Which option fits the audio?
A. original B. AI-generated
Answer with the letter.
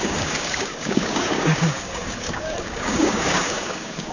B